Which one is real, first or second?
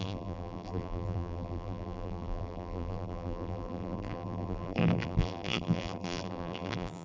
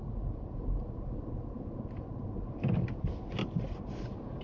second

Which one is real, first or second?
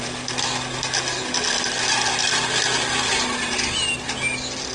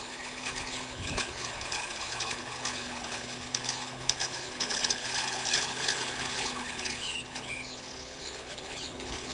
first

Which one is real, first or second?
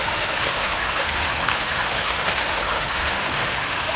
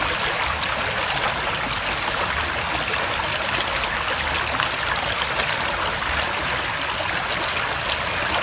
second